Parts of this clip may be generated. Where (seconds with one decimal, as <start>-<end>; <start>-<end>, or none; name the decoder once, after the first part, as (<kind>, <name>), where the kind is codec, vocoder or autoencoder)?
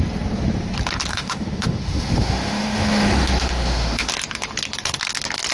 1.1-4.1 (autoencoder, DAC-VAE)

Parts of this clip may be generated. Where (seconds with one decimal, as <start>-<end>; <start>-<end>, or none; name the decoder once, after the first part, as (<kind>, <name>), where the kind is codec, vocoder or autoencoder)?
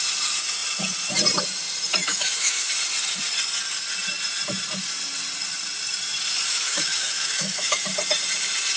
2.0-2.7 (autoencoder, DAC-VAE); 6.5-7.8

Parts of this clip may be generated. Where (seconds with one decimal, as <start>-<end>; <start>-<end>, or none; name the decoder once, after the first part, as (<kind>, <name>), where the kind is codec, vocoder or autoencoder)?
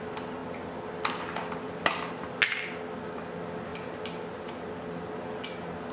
none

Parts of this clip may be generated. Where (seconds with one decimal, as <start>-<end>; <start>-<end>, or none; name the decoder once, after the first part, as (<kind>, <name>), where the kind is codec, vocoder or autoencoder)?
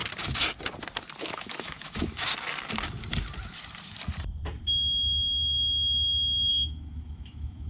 1.2-2.3 (autoencoder, DAC-VAE); 6.5-7.7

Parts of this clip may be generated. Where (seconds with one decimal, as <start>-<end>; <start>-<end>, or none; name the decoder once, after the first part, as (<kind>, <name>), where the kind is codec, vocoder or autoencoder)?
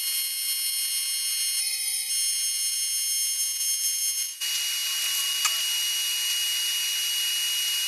1.6-2.1 (autoencoder, DAC-VAE)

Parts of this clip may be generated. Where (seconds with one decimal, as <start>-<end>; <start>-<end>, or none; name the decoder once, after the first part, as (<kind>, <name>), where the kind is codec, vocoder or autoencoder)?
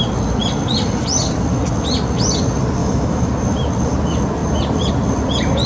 2.8-3.3 (autoencoder, DAC-VAE)